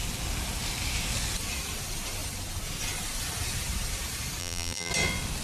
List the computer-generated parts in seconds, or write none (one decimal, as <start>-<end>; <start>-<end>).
4.4-4.9